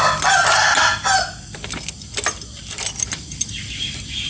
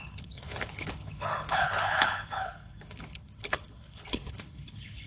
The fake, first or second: second